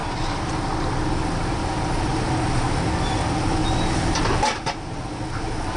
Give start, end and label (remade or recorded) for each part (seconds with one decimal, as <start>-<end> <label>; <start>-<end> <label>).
0.0-5.8 recorded